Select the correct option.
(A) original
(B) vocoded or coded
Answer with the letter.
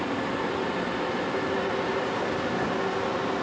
A